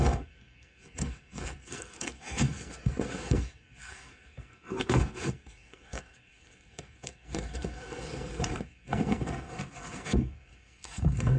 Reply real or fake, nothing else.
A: fake